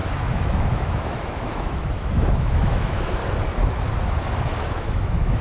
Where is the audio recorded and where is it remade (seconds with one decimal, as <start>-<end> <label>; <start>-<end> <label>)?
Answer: 0.0-3.2 remade; 3.2-4.6 recorded; 4.6-5.4 remade